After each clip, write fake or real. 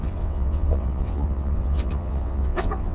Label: fake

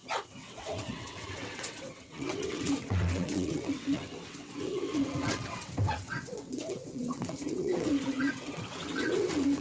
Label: fake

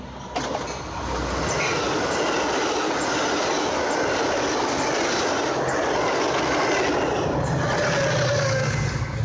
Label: real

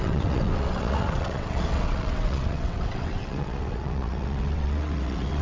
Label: fake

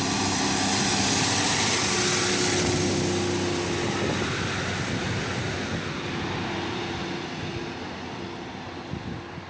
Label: real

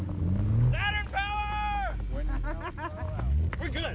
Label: real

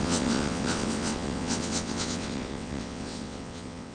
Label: fake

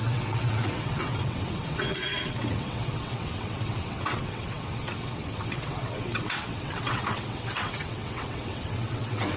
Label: fake